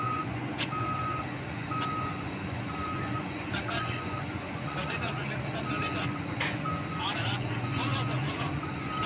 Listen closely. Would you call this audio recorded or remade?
remade